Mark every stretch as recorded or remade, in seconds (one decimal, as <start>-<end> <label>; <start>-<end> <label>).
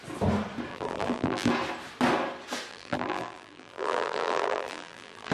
0.0-0.7 recorded; 0.7-1.5 remade; 1.5-2.7 recorded; 2.7-5.3 remade